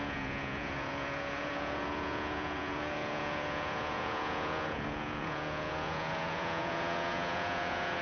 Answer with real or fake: fake